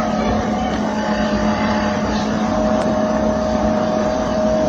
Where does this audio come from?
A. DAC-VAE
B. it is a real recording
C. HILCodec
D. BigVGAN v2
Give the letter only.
D